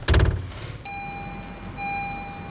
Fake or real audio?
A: real